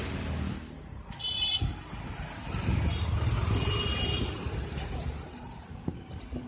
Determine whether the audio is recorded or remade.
recorded